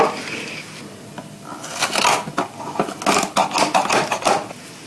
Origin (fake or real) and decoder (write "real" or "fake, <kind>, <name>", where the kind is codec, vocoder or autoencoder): real